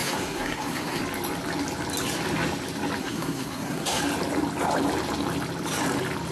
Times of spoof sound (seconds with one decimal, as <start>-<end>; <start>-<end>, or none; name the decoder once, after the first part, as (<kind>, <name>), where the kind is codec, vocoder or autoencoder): 0.0-1.0 (codec, SNAC); 3.0-4.0